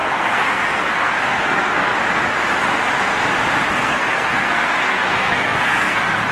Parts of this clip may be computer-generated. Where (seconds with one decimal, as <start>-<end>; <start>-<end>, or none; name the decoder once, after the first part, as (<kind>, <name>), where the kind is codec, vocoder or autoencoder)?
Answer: 0.0-1.9 (codec, SNAC); 3.7-6.3